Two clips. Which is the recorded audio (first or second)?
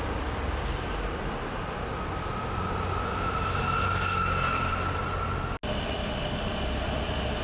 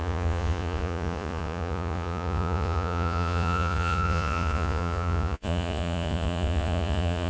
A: first